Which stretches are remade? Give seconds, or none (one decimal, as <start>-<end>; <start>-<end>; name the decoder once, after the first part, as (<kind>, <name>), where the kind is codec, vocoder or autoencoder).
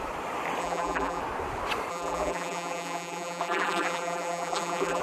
0.6-1.2 (vocoder, BigVGAN v2); 1.9-5.0